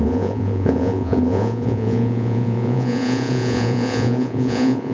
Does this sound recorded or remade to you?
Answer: remade